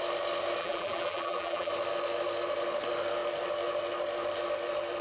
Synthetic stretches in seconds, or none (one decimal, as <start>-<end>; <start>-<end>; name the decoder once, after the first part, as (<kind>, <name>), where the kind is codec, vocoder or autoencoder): 0.6-1.7 (vocoder, BigVGAN v2)